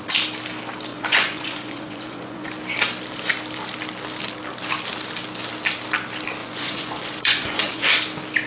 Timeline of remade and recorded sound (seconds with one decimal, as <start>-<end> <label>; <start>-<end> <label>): 0.0-0.9 recorded; 0.9-2.5 remade; 2.5-6.4 recorded; 6.4-7.9 remade; 7.9-8.5 recorded